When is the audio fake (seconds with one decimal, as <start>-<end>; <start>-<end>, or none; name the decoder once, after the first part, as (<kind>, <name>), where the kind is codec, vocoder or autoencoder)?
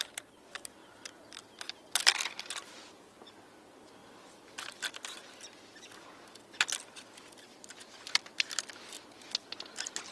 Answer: none